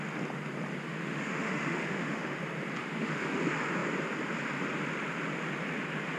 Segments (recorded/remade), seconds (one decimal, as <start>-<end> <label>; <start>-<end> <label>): 0.0-0.9 recorded; 0.9-2.4 remade; 2.4-2.8 recorded; 2.8-3.4 remade; 3.4-6.2 recorded

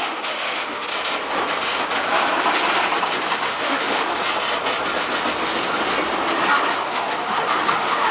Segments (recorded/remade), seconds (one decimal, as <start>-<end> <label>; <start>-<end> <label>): 0.0-0.9 remade; 0.9-3.4 recorded; 3.4-4.0 remade; 4.0-6.9 recorded; 6.9-8.1 remade

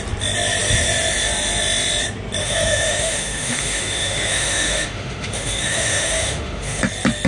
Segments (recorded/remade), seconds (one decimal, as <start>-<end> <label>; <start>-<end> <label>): 0.0-2.4 recorded; 2.4-6.8 remade; 6.8-7.3 recorded

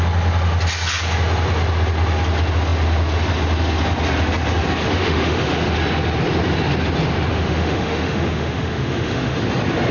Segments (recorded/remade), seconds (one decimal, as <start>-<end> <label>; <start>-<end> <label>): 0.0-4.8 recorded; 4.8-5.7 remade; 5.7-7.3 recorded; 7.3-9.4 remade; 9.4-9.9 recorded

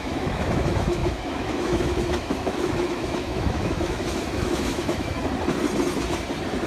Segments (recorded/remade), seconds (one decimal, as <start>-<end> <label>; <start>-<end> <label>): 0.0-5.2 remade; 5.2-6.7 recorded

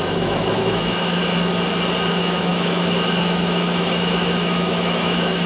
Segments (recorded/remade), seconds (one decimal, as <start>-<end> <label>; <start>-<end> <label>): 0.0-1.2 remade; 1.2-2.1 recorded; 2.1-5.5 remade

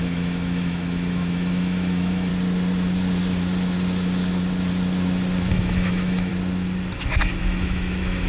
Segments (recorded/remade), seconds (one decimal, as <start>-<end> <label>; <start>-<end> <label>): 0.0-2.3 remade; 2.3-5.5 recorded; 5.5-6.3 remade; 6.3-7.4 recorded; 7.4-8.3 remade